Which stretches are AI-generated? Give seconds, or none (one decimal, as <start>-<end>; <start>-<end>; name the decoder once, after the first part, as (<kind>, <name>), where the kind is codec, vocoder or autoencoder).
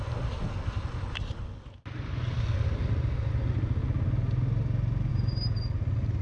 5.1-5.6 (vocoder, BigVGAN v2)